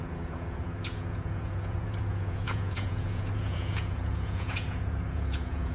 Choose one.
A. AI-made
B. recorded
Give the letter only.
A